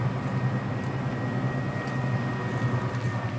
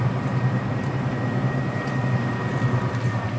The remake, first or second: second